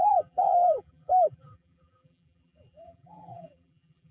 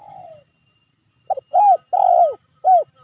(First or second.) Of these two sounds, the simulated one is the first